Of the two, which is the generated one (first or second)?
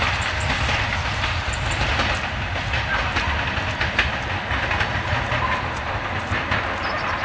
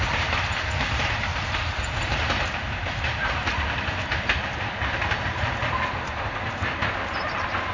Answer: second